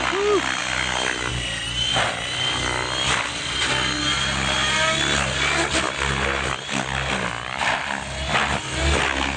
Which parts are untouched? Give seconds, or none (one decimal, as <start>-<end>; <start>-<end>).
0.0-9.4